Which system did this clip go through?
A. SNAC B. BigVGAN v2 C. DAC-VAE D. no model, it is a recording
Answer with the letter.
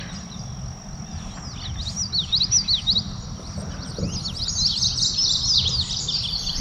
D